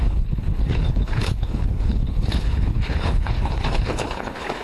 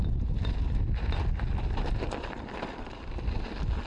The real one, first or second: second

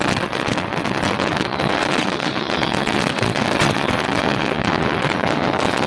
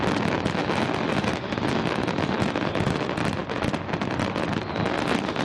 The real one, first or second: second